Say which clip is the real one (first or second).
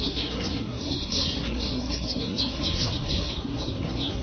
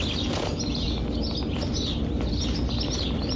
second